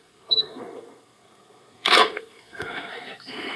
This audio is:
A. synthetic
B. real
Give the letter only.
A